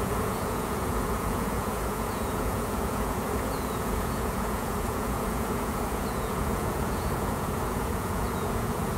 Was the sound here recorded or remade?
remade